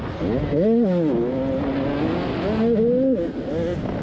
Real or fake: real